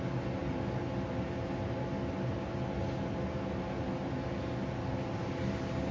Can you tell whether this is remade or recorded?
recorded